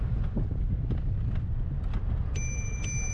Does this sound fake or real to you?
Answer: real